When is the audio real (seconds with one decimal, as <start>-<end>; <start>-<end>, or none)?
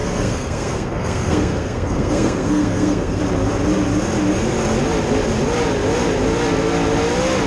3.2-7.5